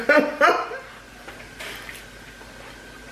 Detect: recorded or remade recorded